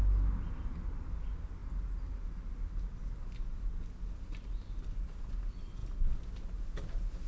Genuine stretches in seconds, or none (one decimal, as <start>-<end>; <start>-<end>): 0.0-7.3